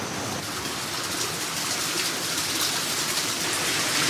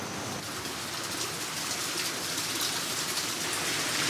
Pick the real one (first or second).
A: second